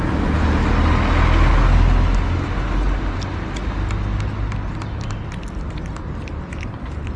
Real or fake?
real